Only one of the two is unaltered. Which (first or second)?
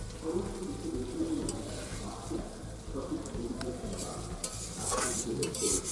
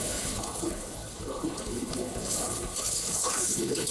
first